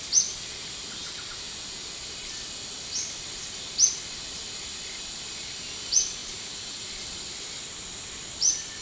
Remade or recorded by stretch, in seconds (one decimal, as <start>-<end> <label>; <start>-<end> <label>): 0.0-6.2 recorded; 6.2-6.8 remade; 6.8-8.8 recorded